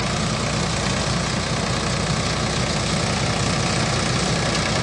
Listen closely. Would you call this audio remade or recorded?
recorded